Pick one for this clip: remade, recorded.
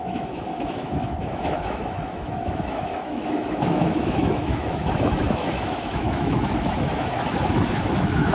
remade